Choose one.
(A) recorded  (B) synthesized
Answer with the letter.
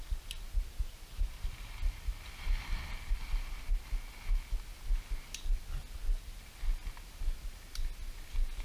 A